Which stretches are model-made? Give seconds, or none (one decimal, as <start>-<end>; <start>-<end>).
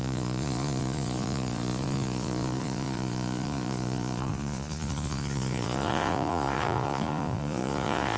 0.0-8.2